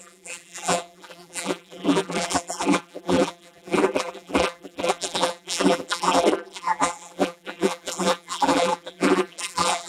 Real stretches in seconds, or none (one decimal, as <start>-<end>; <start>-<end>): none